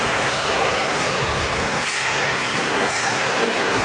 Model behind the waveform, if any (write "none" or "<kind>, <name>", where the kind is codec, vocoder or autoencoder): codec, SNAC